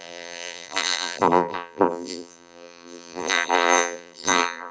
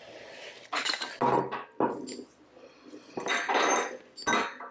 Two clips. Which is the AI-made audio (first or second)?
first